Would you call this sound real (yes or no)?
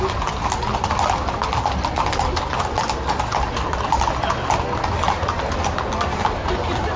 yes